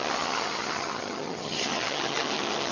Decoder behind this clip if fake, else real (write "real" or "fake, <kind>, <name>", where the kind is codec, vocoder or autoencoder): fake, vocoder, HiFi-GAN